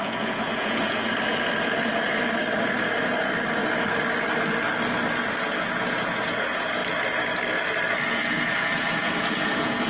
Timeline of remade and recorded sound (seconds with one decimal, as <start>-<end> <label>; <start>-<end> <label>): 0.0-1.0 remade; 1.0-5.6 recorded; 5.6-6.8 remade; 6.8-8.0 recorded; 8.0-9.9 remade